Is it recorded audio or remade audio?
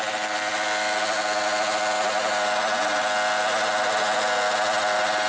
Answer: recorded